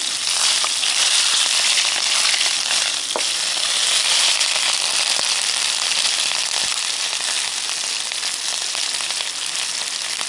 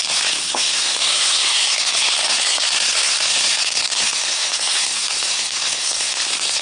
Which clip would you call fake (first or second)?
second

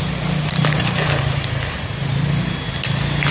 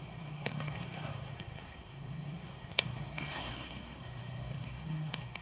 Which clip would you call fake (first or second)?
second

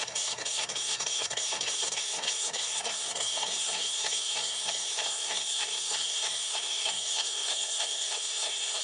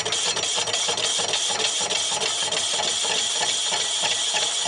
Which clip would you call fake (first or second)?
first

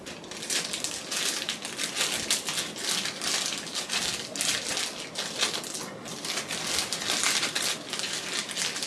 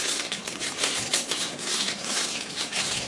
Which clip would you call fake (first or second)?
second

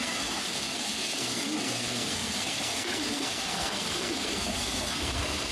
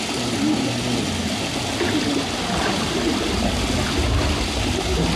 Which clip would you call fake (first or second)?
first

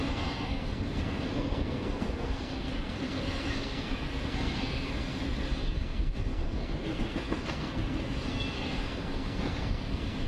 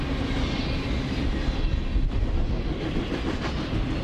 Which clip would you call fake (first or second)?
first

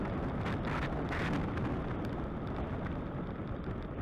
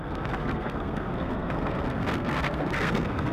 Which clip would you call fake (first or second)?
second